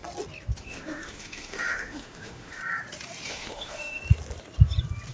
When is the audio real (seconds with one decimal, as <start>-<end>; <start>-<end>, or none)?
0.0-0.6; 2.6-3.3; 4.0-5.1